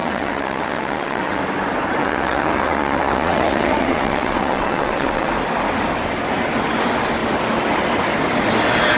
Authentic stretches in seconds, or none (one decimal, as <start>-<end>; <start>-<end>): 1.4-2.0; 5.3-9.0